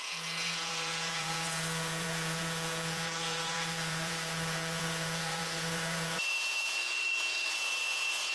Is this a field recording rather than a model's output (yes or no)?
no